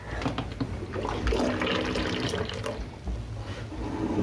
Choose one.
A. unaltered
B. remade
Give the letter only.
A